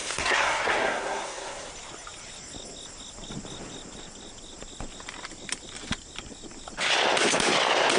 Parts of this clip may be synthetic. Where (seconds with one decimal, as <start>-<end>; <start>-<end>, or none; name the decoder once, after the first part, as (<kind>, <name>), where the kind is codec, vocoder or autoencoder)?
0.0-1.7 (codec, SNAC)